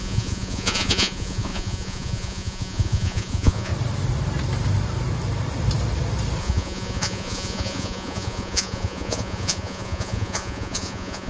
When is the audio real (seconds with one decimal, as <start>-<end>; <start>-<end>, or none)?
3.7-6.4